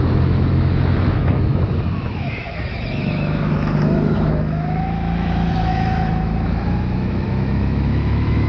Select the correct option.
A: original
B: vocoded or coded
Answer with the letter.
B